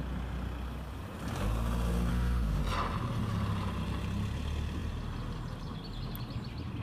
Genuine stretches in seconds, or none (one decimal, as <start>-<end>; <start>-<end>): 0.0-2.1; 2.6-6.8